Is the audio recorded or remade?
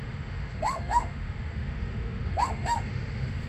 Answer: remade